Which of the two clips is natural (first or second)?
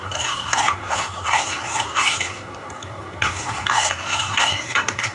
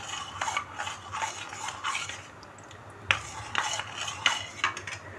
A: second